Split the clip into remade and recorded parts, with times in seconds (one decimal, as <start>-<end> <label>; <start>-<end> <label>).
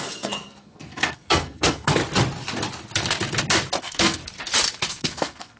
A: 0.0-2.0 remade; 2.0-3.8 recorded; 3.8-4.2 remade; 4.2-4.9 recorded; 4.9-5.6 remade